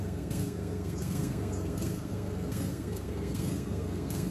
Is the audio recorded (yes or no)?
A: no